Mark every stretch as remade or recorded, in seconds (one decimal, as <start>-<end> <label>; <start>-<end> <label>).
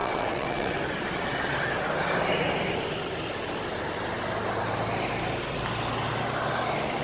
0.0-0.8 remade; 0.8-7.0 recorded